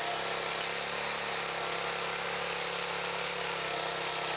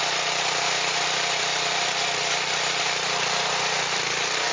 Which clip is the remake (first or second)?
second